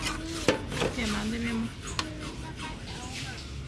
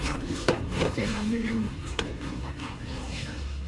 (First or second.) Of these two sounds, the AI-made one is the second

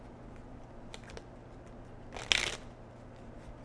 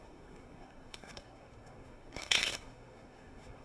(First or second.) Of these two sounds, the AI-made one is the second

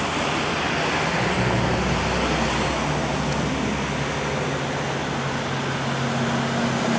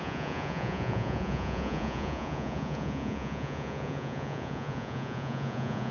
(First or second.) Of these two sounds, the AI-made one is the second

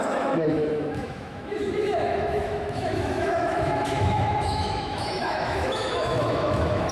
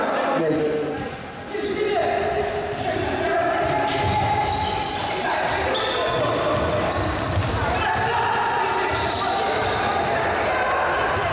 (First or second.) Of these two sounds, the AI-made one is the first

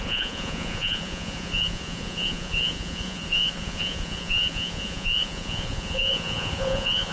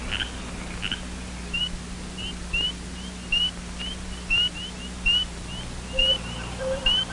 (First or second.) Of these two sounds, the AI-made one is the first